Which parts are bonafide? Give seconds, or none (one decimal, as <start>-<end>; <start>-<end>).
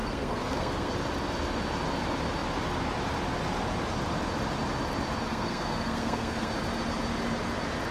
0.9-5.3; 6.5-7.9